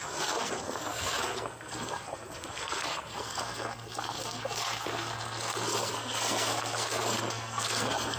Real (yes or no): no